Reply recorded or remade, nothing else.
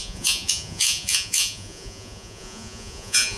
remade